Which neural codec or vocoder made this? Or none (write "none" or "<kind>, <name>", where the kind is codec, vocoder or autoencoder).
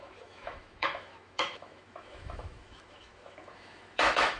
autoencoder, DAC-VAE